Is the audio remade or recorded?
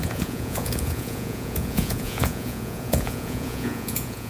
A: remade